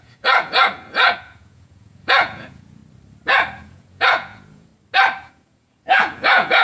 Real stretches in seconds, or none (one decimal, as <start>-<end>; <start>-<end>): 2.8-3.6; 4.7-5.2